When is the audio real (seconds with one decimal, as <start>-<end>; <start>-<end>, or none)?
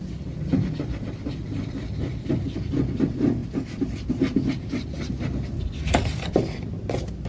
0.0-7.3